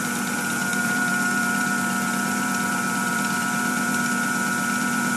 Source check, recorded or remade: remade